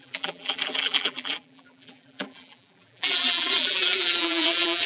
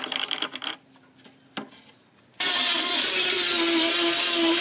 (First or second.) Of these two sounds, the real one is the second